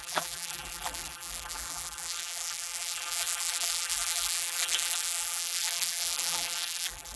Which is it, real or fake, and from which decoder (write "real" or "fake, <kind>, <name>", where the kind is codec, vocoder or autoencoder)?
fake, vocoder, BigVGAN v2